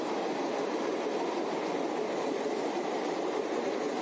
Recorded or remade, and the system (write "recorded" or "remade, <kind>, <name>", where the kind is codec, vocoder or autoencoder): recorded